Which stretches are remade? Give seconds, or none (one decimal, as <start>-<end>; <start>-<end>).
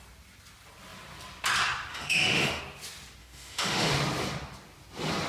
1.9-2.6; 3.2-3.9